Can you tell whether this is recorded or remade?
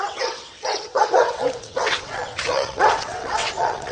remade